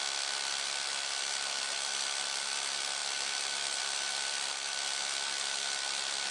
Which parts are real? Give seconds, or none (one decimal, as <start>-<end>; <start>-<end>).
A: 0.0-6.3